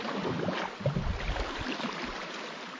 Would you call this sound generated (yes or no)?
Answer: no